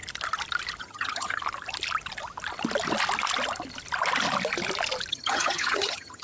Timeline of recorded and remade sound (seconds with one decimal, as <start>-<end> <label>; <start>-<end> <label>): 0.0-0.8 recorded; 0.8-1.4 remade; 1.4-5.1 recorded; 5.1-6.2 remade